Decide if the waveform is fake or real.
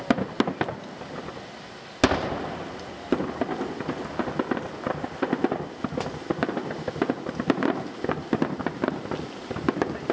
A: real